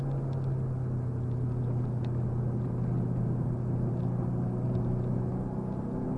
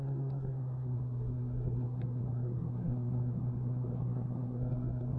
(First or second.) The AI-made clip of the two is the second